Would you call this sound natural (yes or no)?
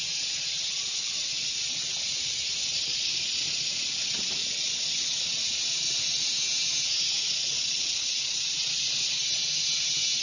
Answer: yes